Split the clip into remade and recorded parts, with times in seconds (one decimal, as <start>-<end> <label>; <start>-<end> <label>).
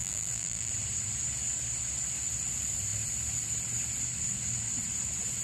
0.0-0.7 remade; 0.7-5.4 recorded